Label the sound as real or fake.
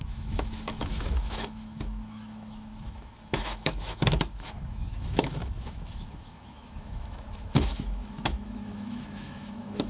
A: fake